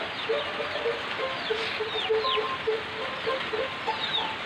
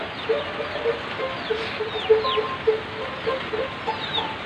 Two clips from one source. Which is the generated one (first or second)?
first